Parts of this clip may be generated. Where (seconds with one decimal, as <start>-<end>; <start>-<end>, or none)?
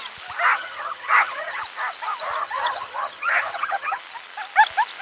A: 0.5-1.6; 2.4-4.0